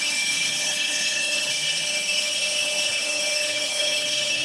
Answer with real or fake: fake